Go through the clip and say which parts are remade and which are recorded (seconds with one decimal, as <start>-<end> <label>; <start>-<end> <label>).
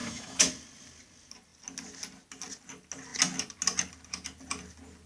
0.0-0.5 remade; 0.5-5.1 recorded